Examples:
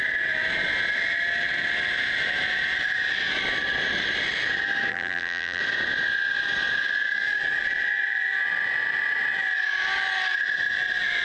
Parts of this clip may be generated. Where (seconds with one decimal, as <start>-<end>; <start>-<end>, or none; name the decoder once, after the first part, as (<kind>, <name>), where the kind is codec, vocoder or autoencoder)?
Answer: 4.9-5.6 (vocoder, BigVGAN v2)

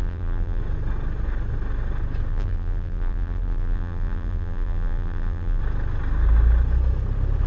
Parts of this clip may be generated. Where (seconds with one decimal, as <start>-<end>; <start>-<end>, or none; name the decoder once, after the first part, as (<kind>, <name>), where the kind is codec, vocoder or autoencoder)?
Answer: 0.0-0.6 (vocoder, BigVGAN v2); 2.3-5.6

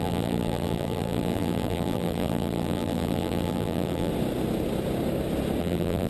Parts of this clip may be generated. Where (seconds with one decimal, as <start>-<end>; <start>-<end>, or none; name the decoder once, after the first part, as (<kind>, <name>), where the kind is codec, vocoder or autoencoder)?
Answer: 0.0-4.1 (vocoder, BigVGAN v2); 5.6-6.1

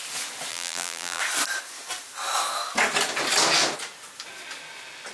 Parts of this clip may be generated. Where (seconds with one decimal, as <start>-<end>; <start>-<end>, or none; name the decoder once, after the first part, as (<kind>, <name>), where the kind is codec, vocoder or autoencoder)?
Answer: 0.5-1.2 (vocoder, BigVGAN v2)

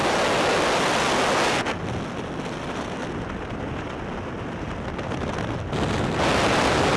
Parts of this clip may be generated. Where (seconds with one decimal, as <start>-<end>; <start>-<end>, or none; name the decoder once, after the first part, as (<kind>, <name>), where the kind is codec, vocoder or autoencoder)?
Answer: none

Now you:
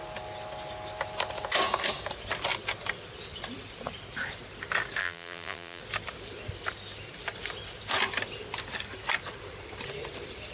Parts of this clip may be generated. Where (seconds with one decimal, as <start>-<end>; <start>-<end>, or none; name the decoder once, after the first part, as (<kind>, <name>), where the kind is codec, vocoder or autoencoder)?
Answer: 5.0-5.8 (vocoder, BigVGAN v2)